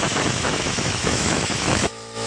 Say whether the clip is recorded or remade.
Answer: remade